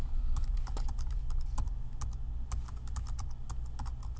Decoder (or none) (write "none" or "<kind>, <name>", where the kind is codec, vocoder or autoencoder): none